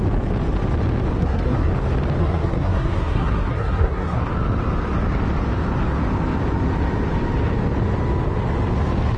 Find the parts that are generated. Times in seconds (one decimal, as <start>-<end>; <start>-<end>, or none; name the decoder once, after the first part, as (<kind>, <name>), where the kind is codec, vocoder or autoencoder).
1.1-1.7 (codec, SNAC); 2.2-4.3